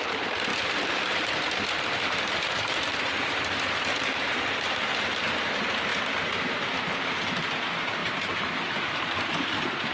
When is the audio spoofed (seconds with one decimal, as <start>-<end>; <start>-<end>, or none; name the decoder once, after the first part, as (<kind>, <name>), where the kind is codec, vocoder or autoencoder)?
0.0-5.9 (vocoder, BigVGAN v2); 6.8-9.9